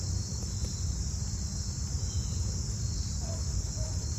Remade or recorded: recorded